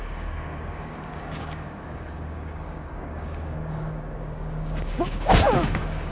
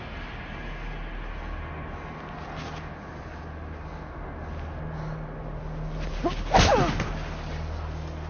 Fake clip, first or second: first